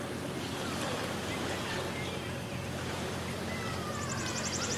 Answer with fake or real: real